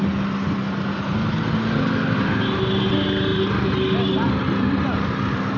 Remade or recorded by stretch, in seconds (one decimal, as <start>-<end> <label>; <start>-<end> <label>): 0.0-5.6 recorded